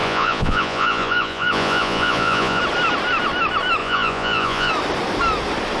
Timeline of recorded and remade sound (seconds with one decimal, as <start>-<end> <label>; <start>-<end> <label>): 0.0-2.6 remade; 2.6-3.8 recorded; 3.8-4.7 remade; 4.7-5.8 recorded